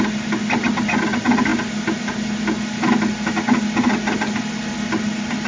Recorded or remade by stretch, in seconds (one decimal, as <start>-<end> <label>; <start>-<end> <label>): 0.0-5.5 recorded